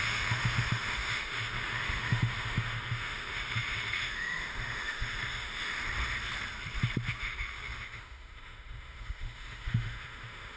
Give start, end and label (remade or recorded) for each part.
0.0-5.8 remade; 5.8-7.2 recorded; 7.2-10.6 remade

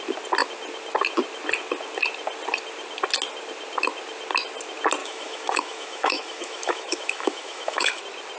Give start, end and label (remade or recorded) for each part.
0.0-5.0 recorded; 5.0-8.0 remade; 8.0-8.4 recorded

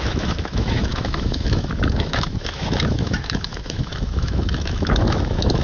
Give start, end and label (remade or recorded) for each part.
0.0-5.6 remade

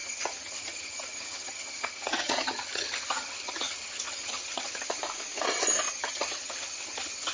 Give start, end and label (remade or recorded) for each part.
0.0-5.0 remade; 5.0-5.9 recorded; 5.9-7.3 remade

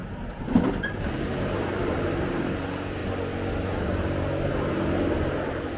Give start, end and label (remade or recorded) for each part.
0.0-3.0 remade; 3.0-4.3 recorded; 4.3-5.8 remade

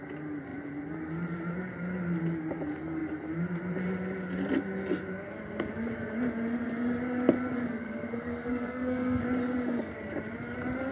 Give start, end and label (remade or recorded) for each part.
0.0-7.8 recorded; 7.8-9.2 remade; 9.2-10.9 recorded

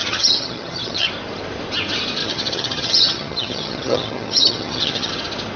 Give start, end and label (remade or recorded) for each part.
0.0-1.1 remade; 1.1-2.2 recorded; 2.2-5.1 remade; 5.1-5.6 recorded